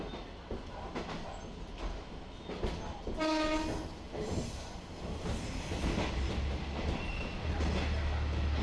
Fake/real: real